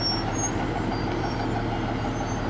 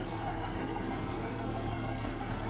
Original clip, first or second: first